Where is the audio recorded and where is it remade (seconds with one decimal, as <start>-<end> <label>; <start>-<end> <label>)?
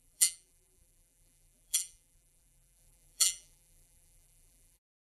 0.0-5.1 remade